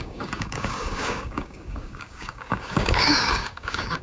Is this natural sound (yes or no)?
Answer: no